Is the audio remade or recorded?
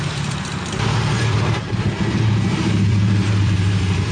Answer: remade